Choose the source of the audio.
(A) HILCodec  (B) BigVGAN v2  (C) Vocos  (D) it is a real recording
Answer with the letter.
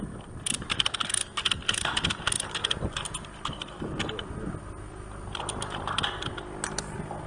D